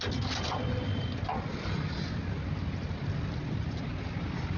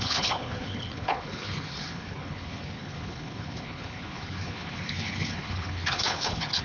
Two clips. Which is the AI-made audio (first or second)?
second